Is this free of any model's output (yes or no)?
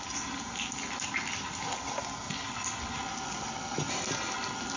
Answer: yes